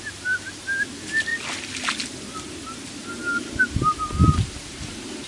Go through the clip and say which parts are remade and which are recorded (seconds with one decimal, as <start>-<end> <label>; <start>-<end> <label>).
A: 0.0-5.3 recorded